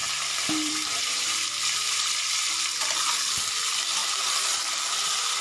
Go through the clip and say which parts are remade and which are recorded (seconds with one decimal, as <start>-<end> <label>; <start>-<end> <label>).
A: 0.0-3.2 remade; 3.2-4.0 recorded; 4.0-5.4 remade